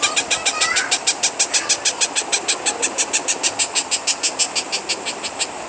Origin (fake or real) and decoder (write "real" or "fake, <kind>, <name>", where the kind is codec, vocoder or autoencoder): real